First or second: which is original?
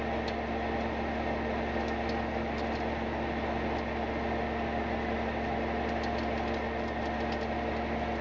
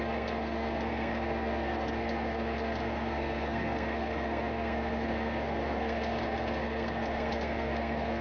first